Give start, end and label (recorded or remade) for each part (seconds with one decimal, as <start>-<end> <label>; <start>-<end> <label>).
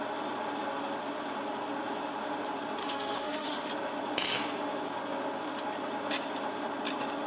0.0-2.8 recorded; 2.8-3.7 remade; 3.7-7.3 recorded